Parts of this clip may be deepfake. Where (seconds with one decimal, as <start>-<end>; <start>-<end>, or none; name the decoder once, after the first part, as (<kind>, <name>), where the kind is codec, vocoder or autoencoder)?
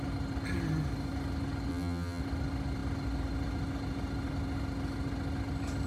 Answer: 1.7-2.2 (vocoder, BigVGAN v2)